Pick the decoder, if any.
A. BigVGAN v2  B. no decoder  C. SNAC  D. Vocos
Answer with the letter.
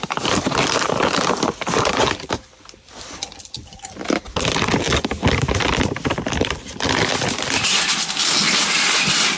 B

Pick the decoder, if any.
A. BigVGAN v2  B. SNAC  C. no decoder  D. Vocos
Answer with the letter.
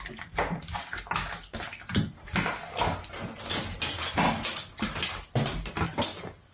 C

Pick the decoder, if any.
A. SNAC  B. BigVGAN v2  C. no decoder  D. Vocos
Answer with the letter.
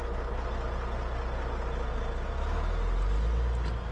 C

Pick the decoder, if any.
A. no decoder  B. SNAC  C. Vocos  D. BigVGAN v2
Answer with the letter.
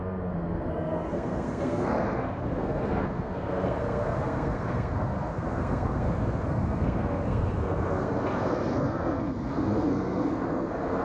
B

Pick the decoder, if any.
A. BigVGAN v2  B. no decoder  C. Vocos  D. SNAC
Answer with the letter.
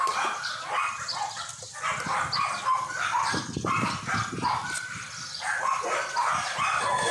B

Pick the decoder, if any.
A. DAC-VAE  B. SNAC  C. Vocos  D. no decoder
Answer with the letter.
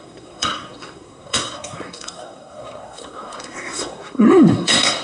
B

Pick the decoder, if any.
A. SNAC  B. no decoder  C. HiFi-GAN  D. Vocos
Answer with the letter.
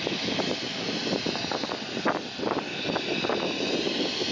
B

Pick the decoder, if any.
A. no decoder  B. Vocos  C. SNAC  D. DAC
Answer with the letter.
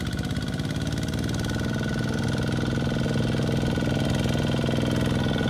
A